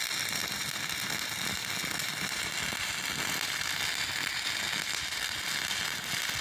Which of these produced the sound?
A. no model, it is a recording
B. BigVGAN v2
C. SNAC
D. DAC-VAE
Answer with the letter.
A